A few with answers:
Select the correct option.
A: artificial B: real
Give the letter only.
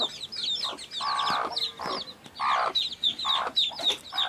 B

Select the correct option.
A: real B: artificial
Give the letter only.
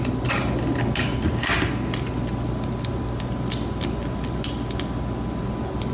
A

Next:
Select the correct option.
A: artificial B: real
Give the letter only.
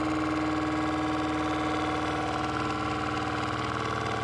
B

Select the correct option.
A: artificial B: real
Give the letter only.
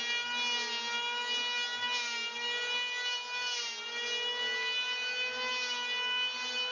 B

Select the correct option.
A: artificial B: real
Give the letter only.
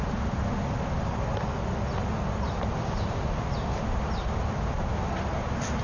B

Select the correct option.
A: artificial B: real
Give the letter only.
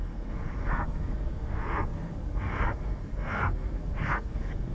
A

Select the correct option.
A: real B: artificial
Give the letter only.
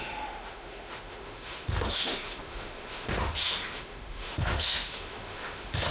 B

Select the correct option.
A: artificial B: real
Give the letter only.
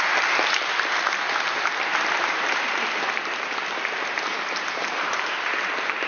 A